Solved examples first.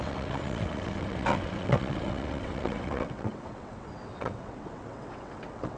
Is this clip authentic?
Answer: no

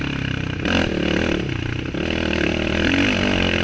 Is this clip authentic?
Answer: yes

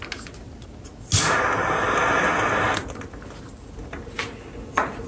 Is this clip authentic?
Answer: yes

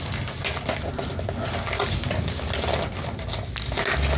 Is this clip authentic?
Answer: yes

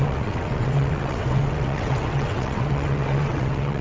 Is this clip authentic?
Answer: no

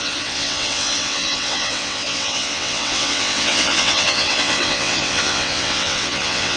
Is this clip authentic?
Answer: no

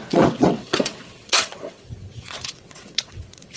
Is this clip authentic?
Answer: no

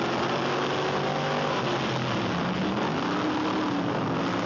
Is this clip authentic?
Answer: yes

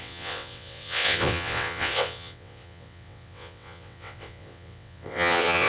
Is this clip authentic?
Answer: no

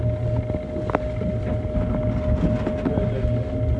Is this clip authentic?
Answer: yes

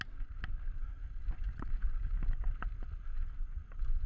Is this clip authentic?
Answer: yes